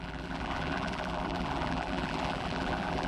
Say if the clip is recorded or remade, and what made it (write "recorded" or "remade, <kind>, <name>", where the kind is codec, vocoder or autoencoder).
remade, vocoder, BigVGAN v2